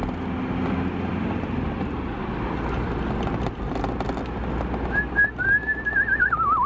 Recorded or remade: recorded